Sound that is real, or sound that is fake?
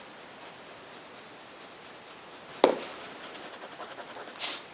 real